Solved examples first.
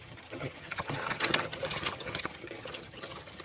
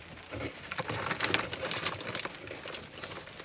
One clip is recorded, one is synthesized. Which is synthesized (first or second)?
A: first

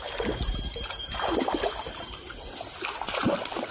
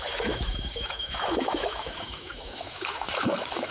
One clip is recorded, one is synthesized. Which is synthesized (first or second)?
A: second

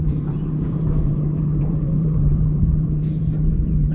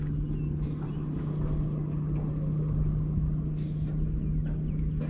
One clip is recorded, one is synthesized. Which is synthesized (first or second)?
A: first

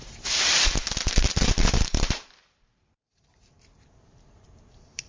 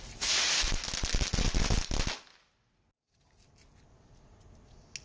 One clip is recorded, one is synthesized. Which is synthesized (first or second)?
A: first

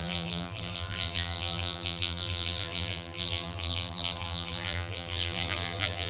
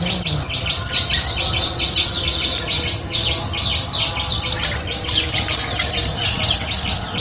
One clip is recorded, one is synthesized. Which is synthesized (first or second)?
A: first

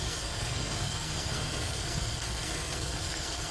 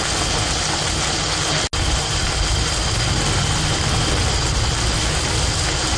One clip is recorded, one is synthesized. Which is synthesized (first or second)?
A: first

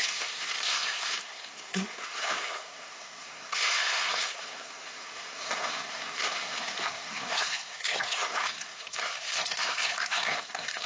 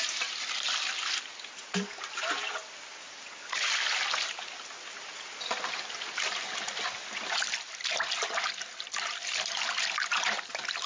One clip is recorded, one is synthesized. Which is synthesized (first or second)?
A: first